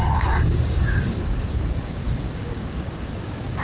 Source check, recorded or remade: remade